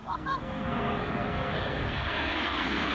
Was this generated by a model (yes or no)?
yes